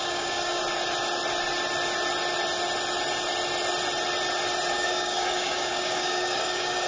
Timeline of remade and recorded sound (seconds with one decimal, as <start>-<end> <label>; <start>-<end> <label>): 0.0-0.6 remade; 0.6-4.7 recorded; 4.7-6.9 remade